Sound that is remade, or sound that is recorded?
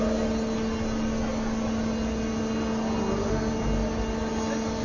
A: recorded